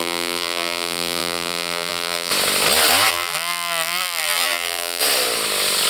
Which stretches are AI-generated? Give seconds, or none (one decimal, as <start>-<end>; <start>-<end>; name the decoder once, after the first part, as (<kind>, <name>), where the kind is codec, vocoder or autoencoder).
0.0-2.3 (vocoder, BigVGAN v2); 3.1-5.0